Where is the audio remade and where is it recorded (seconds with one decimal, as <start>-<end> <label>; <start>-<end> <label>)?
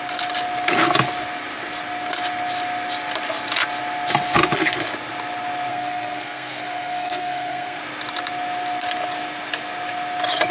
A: 0.0-5.7 recorded; 5.7-7.8 remade; 7.8-10.5 recorded